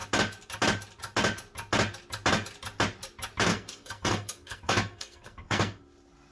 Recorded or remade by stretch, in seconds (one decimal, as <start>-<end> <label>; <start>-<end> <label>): 0.0-3.5 recorded; 3.5-5.8 remade; 5.8-6.3 recorded